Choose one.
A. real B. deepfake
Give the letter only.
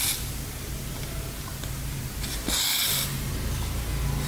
A